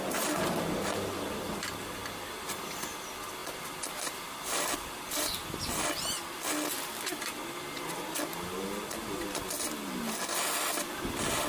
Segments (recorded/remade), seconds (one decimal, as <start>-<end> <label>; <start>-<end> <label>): 0.0-2.0 remade; 2.0-2.5 recorded; 2.5-11.5 remade